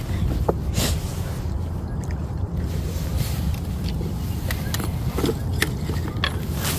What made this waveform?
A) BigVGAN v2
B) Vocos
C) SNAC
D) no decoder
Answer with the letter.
D